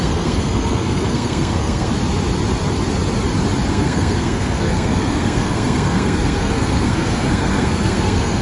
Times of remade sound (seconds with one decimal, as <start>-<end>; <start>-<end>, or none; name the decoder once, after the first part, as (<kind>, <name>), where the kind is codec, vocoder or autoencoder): 0.0-1.9 (codec, SNAC); 3.7-8.4